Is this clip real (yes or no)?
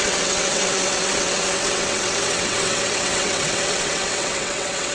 no